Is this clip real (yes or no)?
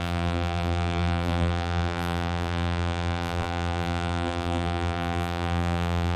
no